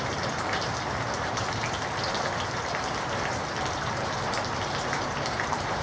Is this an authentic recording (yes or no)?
no